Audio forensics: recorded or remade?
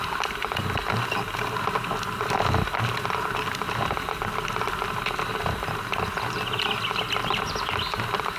recorded